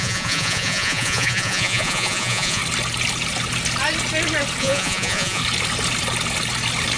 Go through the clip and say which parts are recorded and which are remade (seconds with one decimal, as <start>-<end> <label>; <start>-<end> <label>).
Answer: 0.0-2.6 remade; 2.6-4.6 recorded; 4.6-5.4 remade; 5.4-7.0 recorded